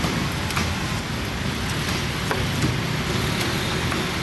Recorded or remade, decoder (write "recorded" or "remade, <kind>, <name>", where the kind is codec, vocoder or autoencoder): recorded